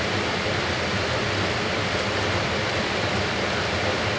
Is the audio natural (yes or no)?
yes